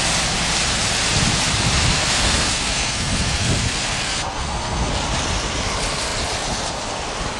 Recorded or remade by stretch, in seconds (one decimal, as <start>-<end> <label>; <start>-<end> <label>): 0.0-1.9 recorded; 1.9-4.9 remade; 4.9-7.4 recorded